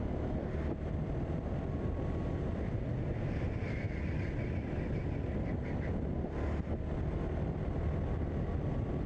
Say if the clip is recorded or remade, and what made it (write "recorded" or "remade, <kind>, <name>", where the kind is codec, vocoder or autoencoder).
recorded